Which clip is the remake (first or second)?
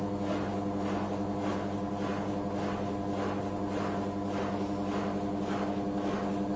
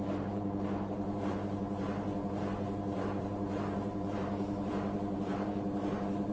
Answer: second